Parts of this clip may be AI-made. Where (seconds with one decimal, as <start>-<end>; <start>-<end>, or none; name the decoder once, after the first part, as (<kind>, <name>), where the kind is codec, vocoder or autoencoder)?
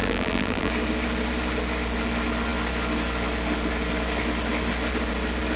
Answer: 0.0-0.7 (vocoder, BigVGAN v2)